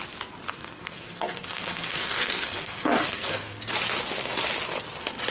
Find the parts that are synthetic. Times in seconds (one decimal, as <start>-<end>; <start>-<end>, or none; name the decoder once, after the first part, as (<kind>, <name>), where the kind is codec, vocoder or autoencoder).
0.5-3.7 (codec, SNAC)